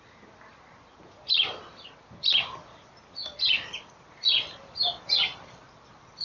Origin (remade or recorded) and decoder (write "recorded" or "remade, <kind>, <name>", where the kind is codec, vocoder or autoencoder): recorded